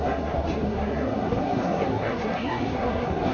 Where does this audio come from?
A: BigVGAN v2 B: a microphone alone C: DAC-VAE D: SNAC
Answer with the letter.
D